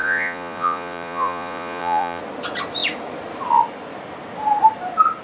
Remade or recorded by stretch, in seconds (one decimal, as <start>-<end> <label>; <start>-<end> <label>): 0.0-2.2 remade; 2.2-5.2 recorded